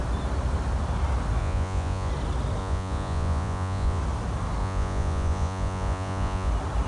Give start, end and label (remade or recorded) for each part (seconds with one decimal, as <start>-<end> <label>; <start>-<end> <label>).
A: 0.0-1.4 recorded; 1.4-2.1 remade; 2.1-2.6 recorded; 2.6-4.0 remade; 4.0-4.6 recorded; 4.6-6.5 remade; 6.5-6.9 recorded